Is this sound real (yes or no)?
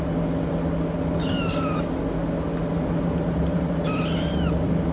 yes